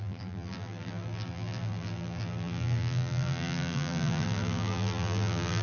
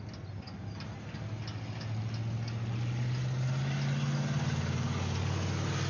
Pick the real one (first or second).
second